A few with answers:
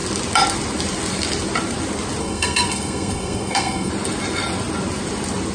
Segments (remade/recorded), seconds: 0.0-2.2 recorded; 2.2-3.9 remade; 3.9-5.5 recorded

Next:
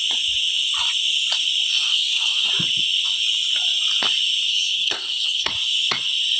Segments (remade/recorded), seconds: 0.0-1.7 recorded; 1.7-2.5 remade; 2.5-4.5 recorded; 4.5-5.5 remade; 5.5-6.4 recorded

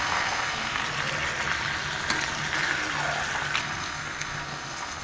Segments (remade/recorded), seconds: 0.0-0.8 remade; 0.8-3.6 recorded; 3.6-5.0 remade

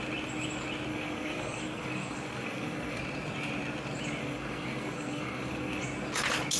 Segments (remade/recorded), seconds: 0.0-0.9 recorded; 0.9-3.0 remade; 3.0-4.2 recorded; 4.2-5.8 remade; 5.8-6.6 recorded

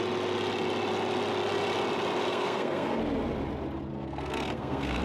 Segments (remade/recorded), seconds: 0.0-2.3 recorded; 2.3-3.0 remade; 3.0-3.9 recorded; 3.9-5.0 remade

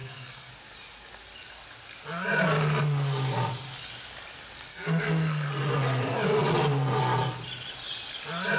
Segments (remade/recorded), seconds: 0.0-0.5 remade; 0.5-4.7 recorded; 4.7-5.5 remade; 5.5-8.6 recorded